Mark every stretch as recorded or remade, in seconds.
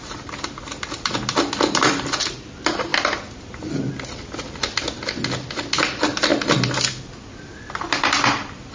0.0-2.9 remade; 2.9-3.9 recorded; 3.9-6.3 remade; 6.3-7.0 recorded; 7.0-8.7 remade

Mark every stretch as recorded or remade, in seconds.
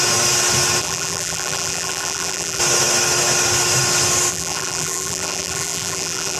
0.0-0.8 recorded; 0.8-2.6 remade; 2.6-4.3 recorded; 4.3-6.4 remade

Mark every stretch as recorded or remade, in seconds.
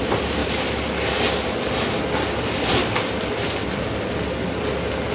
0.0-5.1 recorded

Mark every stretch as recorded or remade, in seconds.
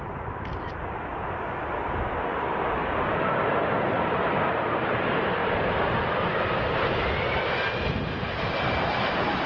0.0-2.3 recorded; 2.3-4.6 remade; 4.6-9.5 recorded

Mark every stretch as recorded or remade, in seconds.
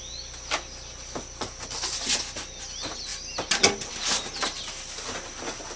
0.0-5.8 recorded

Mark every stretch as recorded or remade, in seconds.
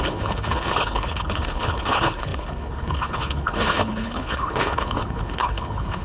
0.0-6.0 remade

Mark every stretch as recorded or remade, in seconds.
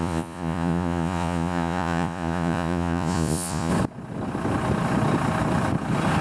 0.0-3.7 remade; 3.7-6.2 recorded